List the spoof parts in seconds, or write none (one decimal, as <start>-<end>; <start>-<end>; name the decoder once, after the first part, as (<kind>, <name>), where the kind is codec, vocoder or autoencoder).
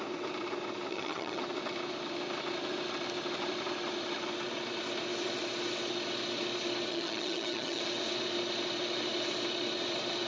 0.9-1.4 (vocoder, HiFi-GAN); 6.9-7.8